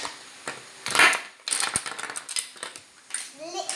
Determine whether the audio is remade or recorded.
recorded